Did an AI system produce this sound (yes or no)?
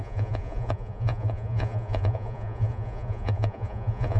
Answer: yes